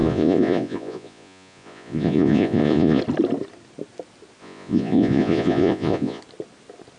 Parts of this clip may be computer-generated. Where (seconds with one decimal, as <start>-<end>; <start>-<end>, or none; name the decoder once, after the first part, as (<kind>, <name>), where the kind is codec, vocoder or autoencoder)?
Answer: 0.0-3.0 (vocoder, Vocos); 4.4-6.2